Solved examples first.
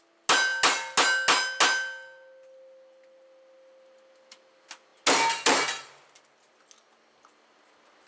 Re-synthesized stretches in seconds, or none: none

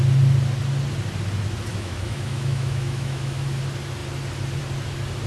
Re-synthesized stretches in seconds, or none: 1.7-3.6 (autoencoder, DAC-VAE)

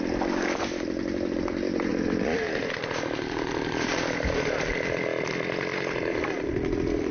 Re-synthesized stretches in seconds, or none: none

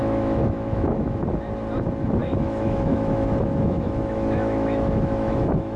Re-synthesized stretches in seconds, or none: 0.0-1.2 (autoencoder, DAC-VAE); 2.2-5.8

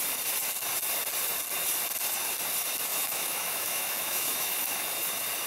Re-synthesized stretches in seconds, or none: 2.9-4.9 (autoencoder, DAC-VAE)

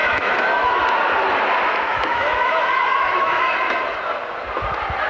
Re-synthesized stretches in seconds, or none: 0.0-0.8 (autoencoder, DAC-VAE); 1.9-3.4

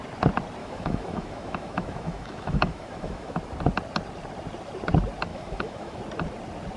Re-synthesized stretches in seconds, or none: 0.6-3.4 (autoencoder, DAC-VAE); 5.3-6.0

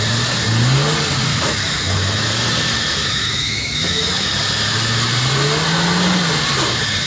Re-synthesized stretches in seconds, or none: 1.3-2.3 (autoencoder, DAC-VAE); 3.0-4.3